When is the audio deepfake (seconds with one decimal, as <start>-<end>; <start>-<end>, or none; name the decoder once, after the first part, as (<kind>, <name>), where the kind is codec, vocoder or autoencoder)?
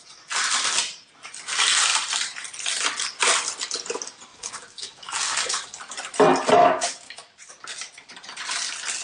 4.3-5.8 (codec, DAC); 6.6-7.5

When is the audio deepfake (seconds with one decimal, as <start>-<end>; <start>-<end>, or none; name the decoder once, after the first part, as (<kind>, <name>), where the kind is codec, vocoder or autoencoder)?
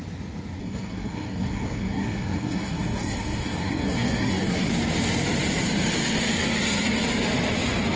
0.6-4.7 (codec, SNAC)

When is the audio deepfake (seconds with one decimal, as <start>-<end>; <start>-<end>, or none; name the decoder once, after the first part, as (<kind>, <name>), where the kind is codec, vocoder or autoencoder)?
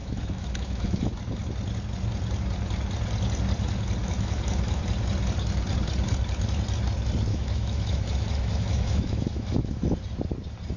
0.0-1.0 (autoencoder, DAC-VAE); 4.0-4.8; 7.3-9.8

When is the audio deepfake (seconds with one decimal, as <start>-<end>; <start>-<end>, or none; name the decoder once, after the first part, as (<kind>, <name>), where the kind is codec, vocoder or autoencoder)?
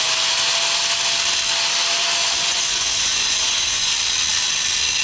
2.2-3.9 (vocoder, Vocos)